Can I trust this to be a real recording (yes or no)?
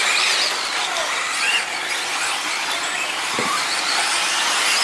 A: yes